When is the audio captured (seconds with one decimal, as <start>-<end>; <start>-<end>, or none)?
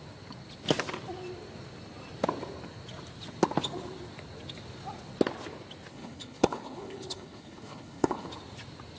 0.0-5.9; 8.3-9.0